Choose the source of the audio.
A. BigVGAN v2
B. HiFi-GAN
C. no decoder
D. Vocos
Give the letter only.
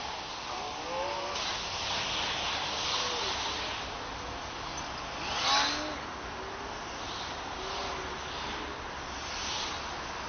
C